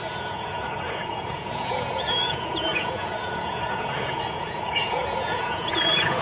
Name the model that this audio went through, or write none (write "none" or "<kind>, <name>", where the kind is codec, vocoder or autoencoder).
vocoder, Vocos